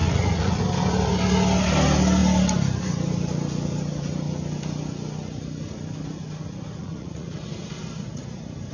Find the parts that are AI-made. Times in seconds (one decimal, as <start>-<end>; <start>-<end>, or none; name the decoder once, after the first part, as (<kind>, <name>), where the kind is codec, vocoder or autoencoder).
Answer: 0.0-0.6 (vocoder, Vocos); 6.8-7.4